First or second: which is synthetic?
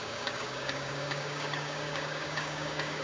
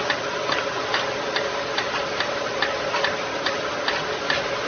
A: first